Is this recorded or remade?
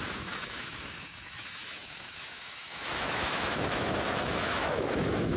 remade